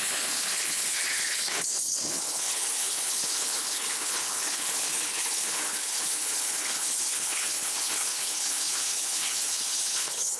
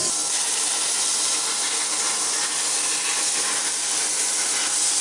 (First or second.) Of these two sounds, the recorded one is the second